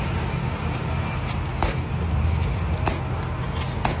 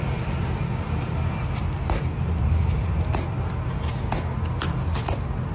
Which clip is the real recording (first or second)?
first